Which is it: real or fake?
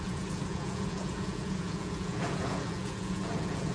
fake